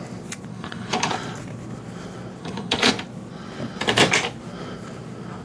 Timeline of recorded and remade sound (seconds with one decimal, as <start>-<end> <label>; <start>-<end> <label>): 0.0-0.5 recorded; 0.5-1.1 remade; 1.1-2.4 recorded; 2.4-2.9 remade; 2.9-5.4 recorded

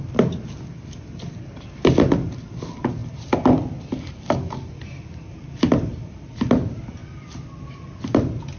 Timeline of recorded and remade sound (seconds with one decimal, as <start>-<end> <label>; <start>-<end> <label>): 0.0-8.6 recorded

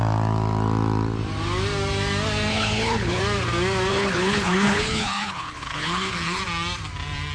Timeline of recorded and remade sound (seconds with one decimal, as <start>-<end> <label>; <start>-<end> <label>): 0.0-2.5 recorded; 2.5-3.2 remade; 3.2-3.9 recorded; 3.9-6.4 remade; 6.4-7.3 recorded